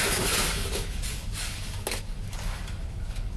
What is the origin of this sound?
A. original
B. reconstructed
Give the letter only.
B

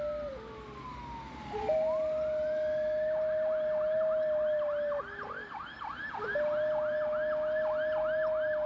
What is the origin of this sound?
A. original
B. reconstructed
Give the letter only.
A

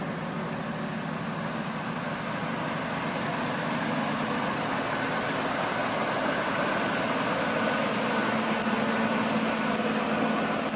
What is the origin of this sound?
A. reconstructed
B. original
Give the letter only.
B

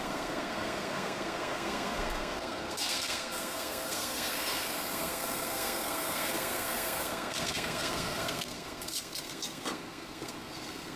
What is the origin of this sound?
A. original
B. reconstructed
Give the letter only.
B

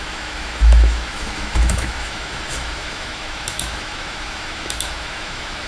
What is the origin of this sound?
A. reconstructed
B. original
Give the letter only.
A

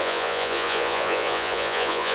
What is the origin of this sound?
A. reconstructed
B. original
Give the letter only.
A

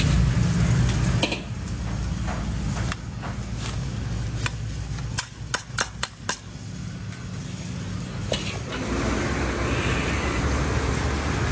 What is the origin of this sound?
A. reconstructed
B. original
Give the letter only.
B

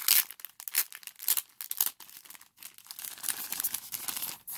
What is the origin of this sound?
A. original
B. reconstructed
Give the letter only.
A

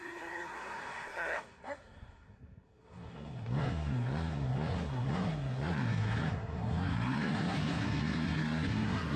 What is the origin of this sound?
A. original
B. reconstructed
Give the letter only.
B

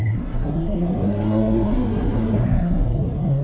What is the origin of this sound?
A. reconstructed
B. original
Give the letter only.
A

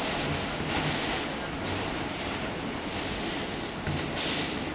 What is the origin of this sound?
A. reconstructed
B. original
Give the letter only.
B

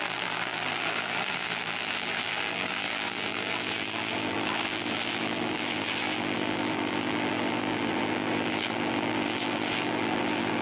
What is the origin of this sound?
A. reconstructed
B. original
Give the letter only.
A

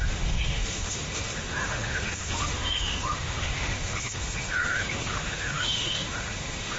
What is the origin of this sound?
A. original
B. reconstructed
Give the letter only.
B